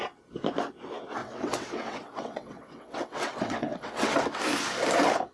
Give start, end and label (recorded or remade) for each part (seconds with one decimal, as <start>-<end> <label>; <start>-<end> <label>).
0.0-1.2 recorded; 1.2-4.4 remade; 4.4-5.3 recorded